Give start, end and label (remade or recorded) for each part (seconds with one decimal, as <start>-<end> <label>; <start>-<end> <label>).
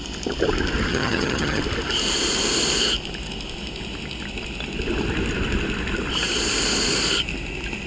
0.0-0.9 recorded; 0.9-1.6 remade; 1.6-7.9 recorded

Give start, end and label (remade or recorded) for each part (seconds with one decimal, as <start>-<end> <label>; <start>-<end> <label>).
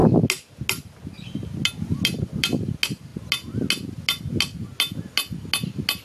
0.0-6.0 recorded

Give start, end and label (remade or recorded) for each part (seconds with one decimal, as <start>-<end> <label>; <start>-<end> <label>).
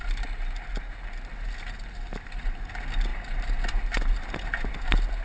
0.0-5.2 recorded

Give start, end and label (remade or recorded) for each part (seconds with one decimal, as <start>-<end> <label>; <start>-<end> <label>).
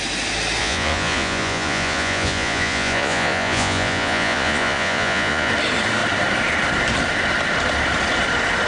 0.0-0.6 recorded; 0.6-5.5 remade; 5.5-8.7 recorded